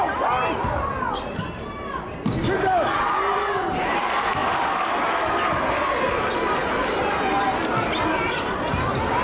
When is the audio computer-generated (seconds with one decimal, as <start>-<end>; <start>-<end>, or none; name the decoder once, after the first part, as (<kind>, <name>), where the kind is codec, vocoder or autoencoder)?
none